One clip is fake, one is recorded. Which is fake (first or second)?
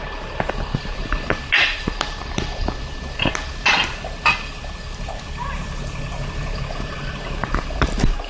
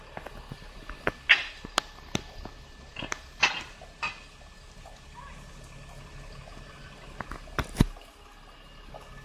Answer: first